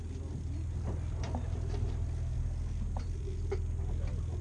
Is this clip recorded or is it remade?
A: recorded